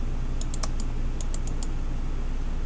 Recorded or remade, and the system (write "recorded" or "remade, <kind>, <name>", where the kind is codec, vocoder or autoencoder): recorded